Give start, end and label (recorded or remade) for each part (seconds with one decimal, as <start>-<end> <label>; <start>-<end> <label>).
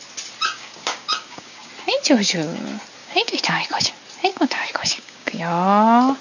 0.0-0.4 recorded; 0.4-1.7 remade; 1.7-3.0 recorded; 3.0-3.9 remade; 3.9-4.3 recorded; 4.3-5.4 remade; 5.4-6.2 recorded